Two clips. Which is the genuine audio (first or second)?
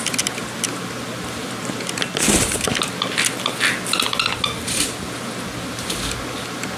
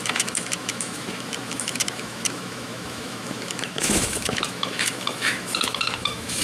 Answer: first